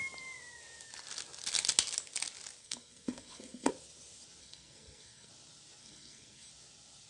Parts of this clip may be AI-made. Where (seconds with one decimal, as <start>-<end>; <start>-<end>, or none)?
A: 2.6-3.7; 4.4-5.3; 5.8-6.5

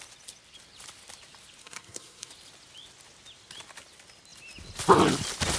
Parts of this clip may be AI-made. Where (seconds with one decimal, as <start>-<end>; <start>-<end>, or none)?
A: 1.6-2.3

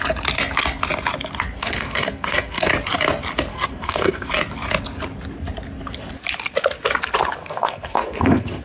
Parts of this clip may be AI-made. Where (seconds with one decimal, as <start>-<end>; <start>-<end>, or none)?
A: 1.6-2.7; 3.5-4.3; 7.4-8.6

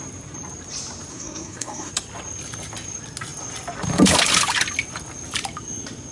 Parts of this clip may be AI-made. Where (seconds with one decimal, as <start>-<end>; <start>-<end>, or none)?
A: 1.1-1.9